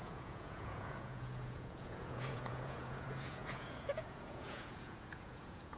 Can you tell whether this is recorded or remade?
remade